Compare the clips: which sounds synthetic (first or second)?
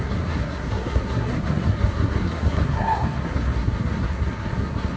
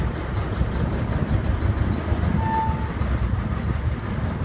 first